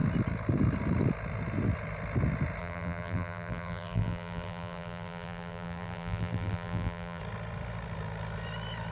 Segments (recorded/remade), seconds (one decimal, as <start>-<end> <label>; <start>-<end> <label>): 0.0-2.6 recorded; 2.6-7.2 remade; 7.2-8.9 recorded